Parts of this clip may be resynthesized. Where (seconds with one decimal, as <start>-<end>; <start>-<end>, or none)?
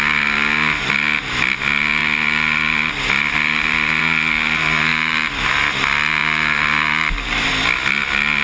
2.0-4.0; 4.9-5.5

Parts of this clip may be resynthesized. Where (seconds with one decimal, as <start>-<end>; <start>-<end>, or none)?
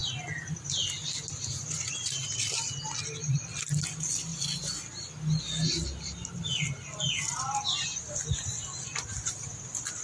none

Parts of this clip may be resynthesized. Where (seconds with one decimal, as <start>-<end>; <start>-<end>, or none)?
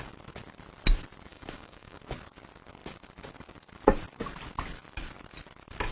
1.3-2.0